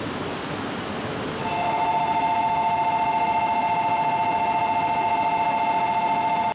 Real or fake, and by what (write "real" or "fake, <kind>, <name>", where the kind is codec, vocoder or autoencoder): real